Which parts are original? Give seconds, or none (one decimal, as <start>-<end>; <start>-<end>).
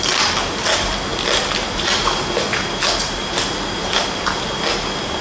0.0-5.2